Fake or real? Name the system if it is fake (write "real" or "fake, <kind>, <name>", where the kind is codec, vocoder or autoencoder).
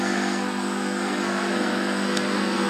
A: fake, codec, SNAC